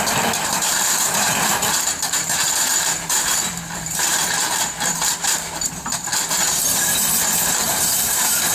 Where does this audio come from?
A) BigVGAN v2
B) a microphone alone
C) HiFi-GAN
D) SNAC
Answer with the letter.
A